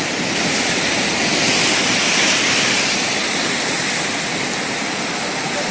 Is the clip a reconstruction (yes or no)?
no